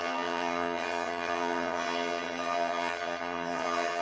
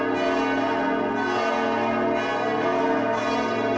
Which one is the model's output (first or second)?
first